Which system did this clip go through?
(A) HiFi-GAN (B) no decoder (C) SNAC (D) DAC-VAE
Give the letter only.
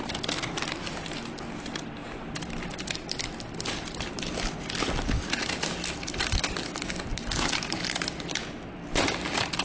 B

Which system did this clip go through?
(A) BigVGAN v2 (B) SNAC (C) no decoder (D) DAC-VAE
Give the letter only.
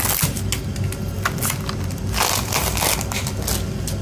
C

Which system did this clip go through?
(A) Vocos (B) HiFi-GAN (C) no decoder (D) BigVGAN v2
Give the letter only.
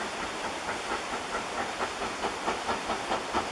C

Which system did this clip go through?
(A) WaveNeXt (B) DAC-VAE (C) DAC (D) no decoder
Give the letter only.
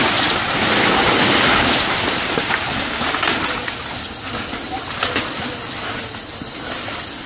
D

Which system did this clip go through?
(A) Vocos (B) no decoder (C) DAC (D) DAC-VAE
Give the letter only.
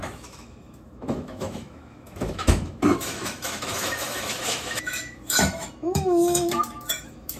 D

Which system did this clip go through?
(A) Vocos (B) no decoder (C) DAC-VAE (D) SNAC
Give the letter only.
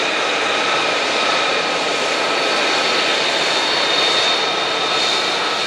B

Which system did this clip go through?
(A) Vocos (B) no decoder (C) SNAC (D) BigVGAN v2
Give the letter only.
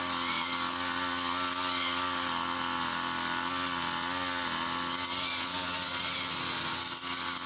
B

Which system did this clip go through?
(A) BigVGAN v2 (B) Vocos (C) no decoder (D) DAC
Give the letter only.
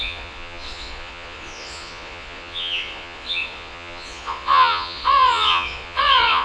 B